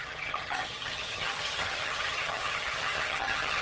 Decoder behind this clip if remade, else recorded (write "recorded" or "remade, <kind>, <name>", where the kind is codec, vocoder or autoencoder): remade, vocoder, HiFi-GAN